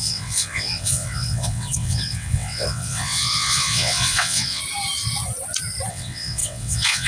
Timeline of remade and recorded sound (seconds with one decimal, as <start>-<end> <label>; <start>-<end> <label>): 0.0-4.6 remade; 4.6-5.9 recorded; 5.9-7.1 remade